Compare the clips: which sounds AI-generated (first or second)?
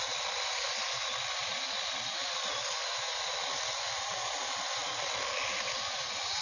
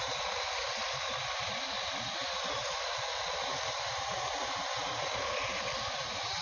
second